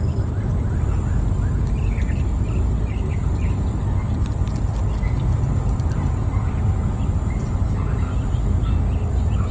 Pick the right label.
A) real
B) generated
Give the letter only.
A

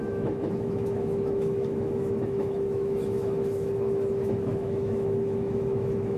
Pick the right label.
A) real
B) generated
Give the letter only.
B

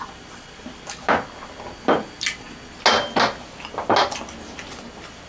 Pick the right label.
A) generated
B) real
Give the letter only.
B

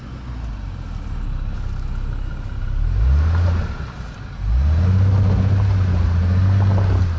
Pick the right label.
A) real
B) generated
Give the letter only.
A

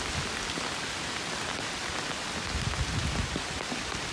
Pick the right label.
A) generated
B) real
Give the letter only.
B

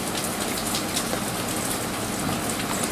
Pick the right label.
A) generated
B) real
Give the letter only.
B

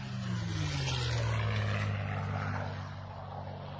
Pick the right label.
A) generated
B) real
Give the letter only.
B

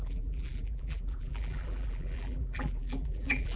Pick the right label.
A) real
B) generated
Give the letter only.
B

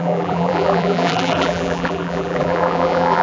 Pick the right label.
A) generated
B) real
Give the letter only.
A